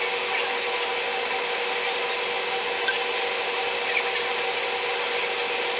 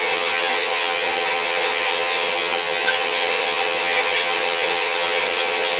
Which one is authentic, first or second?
first